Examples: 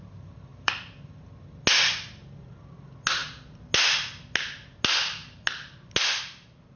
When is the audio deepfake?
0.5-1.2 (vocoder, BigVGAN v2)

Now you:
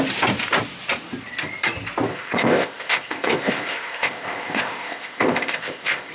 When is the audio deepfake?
2.1-6.1 (codec, ZipCodec)